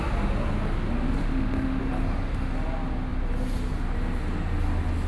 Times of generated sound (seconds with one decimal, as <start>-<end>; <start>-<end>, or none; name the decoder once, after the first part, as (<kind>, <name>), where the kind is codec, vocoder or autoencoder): 1.2-1.8 (autoencoder, DAC-VAE)